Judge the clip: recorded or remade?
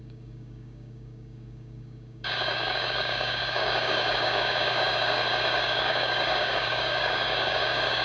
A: remade